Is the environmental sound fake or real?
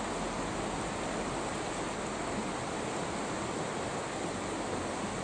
real